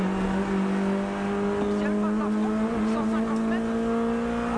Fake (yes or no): no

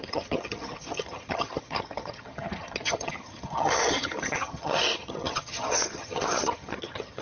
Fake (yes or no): yes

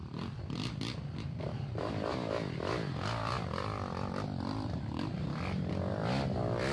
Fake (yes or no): yes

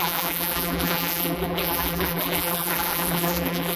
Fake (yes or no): yes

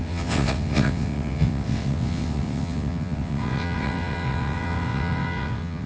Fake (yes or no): yes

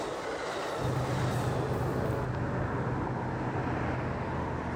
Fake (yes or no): no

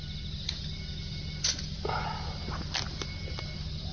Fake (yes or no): no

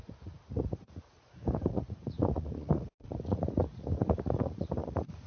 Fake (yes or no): yes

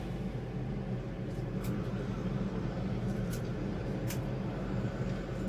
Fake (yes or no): yes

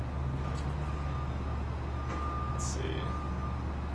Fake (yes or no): no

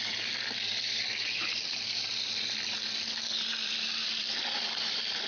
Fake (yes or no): yes